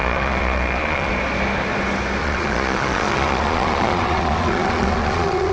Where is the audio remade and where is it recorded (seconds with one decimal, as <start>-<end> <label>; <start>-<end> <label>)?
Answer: 0.0-1.1 remade; 1.1-2.2 recorded; 2.2-5.5 remade